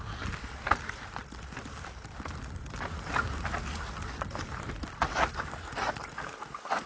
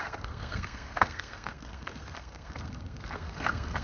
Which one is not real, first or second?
second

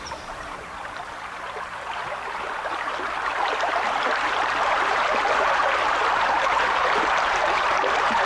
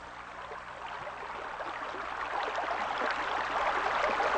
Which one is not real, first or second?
first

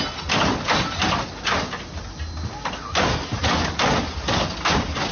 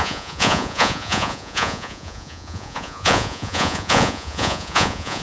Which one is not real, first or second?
second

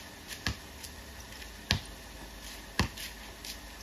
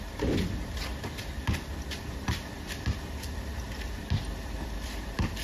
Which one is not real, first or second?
second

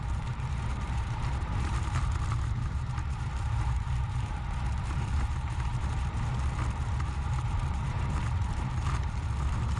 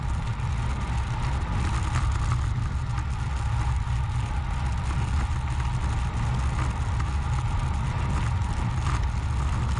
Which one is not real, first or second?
first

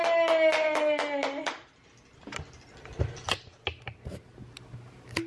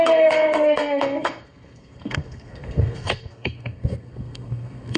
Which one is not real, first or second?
second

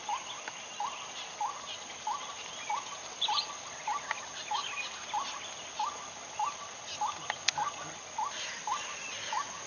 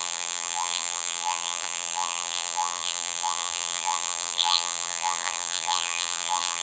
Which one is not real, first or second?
second